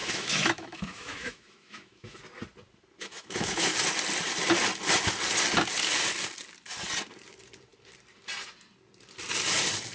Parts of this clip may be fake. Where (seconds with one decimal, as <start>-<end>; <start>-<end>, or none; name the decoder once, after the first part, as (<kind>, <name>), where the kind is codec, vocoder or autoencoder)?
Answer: 0.0-2.2 (autoencoder, DAC-VAE); 3.0-3.7